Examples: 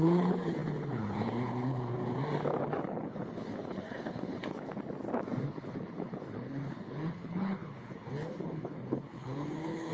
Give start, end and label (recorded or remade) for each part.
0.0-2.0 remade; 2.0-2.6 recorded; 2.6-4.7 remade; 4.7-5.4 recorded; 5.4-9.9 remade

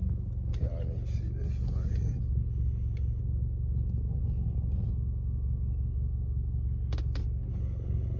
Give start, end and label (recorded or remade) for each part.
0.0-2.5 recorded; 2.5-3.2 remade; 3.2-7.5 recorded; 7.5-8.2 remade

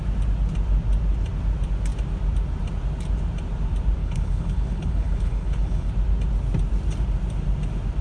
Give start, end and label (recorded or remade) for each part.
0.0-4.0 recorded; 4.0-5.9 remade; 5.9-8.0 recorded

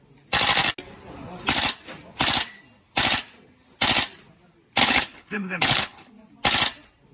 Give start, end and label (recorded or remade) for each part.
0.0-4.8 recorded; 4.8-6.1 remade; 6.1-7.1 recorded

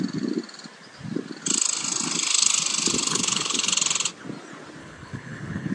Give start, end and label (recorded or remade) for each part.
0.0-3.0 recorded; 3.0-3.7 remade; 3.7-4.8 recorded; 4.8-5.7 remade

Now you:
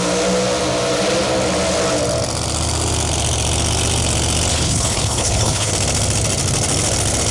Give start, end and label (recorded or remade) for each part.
0.0-4.5 recorded; 4.5-5.7 remade; 5.7-7.3 recorded

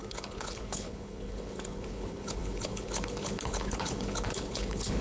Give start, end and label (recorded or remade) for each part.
0.0-5.0 remade